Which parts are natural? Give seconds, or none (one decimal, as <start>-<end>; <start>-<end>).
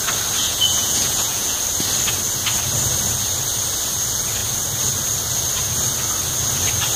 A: 0.0-0.4; 1.6-7.0